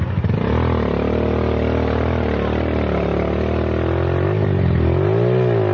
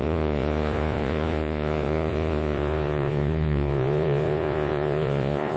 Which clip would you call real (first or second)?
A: first